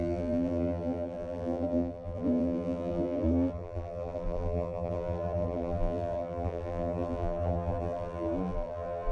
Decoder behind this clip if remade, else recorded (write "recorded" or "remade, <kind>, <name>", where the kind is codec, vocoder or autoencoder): remade, vocoder, BigVGAN v2